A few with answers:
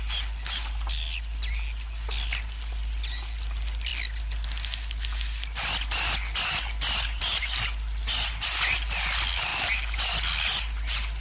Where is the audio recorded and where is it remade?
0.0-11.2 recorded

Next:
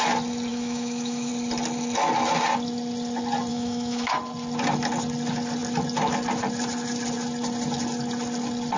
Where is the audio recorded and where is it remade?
0.0-0.5 recorded; 0.5-1.3 remade; 1.3-3.5 recorded; 3.5-4.1 remade; 4.1-8.8 recorded

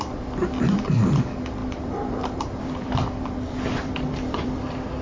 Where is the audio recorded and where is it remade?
0.0-1.6 recorded; 1.6-4.6 remade; 4.6-5.0 recorded